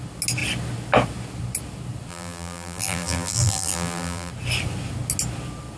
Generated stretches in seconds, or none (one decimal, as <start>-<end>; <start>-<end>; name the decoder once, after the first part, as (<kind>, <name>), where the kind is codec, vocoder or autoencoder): 2.1-4.3 (vocoder, BigVGAN v2)

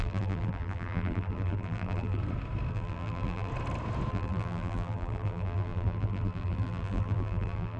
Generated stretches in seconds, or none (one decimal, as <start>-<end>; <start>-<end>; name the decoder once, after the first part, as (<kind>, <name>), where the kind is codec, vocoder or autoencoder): 0.0-2.2 (vocoder, BigVGAN v2); 2.7-3.5; 4.1-7.8

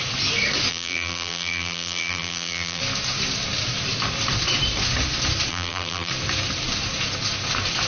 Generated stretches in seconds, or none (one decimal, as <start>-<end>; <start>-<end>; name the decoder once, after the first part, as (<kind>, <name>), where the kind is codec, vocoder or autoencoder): 0.7-2.8 (vocoder, BigVGAN v2); 5.5-6.1

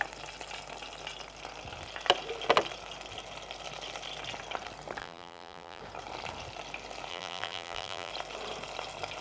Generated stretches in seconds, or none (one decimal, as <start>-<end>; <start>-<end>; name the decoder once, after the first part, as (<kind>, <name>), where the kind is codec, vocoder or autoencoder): 5.0-5.8 (vocoder, BigVGAN v2); 7.1-8.1

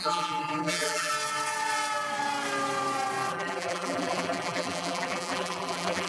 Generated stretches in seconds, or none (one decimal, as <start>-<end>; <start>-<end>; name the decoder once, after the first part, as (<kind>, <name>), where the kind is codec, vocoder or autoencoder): 0.0-1.1 (vocoder, BigVGAN v2); 3.3-6.1

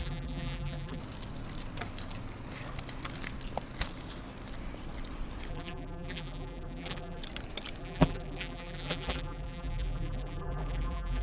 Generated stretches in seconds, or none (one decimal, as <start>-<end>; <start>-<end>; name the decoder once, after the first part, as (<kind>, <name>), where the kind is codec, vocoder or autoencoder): 0.0-1.0 (vocoder, BigVGAN v2); 5.5-7.2; 7.8-11.2

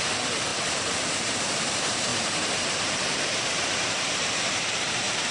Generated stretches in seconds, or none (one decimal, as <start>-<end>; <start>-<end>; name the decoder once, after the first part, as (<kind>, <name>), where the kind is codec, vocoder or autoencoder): 0.0-5.3 (vocoder, BigVGAN v2)